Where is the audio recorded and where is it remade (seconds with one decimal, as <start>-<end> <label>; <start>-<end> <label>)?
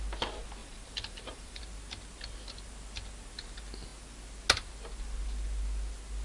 0.0-0.6 recorded; 0.6-1.6 remade; 1.6-6.2 recorded